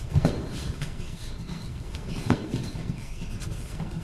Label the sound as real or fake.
fake